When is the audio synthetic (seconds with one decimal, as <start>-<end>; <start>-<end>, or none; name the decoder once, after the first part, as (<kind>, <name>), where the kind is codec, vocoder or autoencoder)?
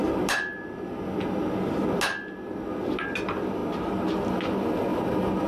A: 4.9-5.5 (vocoder, BigVGAN v2)